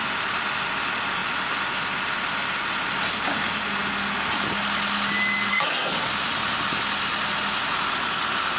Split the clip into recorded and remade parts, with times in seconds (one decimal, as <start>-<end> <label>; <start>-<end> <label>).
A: 0.0-5.5 recorded; 5.5-6.1 remade; 6.1-8.6 recorded